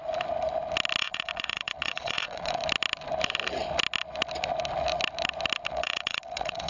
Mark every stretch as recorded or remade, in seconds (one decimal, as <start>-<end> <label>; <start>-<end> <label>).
0.0-1.0 recorded; 1.0-2.6 remade; 2.6-5.7 recorded; 5.7-6.7 remade